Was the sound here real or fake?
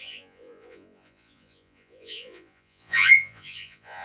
fake